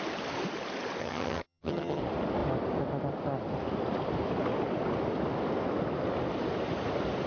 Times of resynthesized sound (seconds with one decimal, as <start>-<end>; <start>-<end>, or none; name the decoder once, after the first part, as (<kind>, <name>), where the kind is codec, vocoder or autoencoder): 1.0-2.0 (vocoder, HiFi-GAN)